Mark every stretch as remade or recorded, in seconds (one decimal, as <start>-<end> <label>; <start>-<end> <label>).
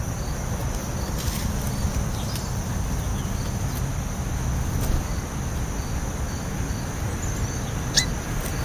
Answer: 0.0-0.6 recorded; 0.6-2.7 remade; 2.7-8.6 recorded